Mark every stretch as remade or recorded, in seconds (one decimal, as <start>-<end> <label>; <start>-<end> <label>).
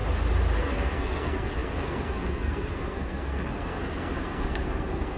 0.0-0.6 recorded; 0.6-5.2 remade